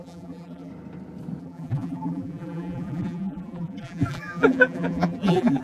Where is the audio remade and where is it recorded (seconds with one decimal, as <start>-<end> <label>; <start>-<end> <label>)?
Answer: 0.0-0.7 remade; 0.7-1.4 recorded; 1.4-5.6 remade